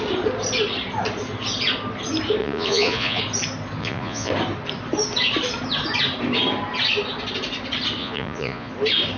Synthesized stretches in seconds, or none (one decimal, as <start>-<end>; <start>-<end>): 2.4-3.2; 3.8-4.3; 8.0-8.7